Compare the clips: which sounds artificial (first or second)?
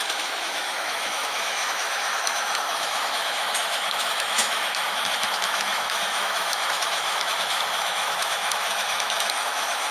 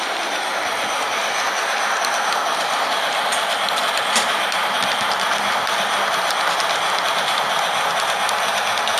first